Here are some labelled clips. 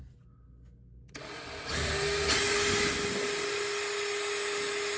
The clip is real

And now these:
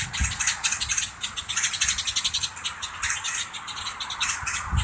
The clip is real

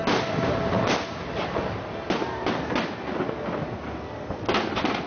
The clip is real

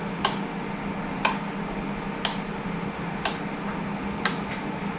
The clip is real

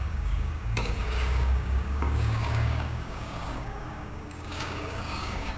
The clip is fake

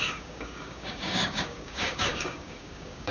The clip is fake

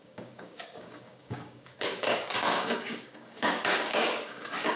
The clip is fake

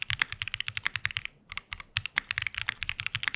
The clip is real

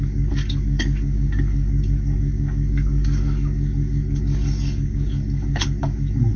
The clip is fake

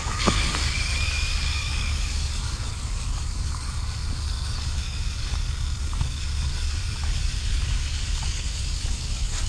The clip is fake